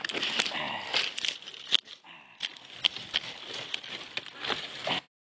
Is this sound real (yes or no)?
yes